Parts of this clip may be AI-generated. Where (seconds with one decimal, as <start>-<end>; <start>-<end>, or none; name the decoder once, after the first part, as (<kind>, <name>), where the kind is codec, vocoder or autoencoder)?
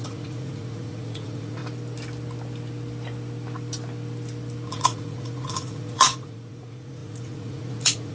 0.0-1.6 (vocoder, Vocos); 4.7-8.1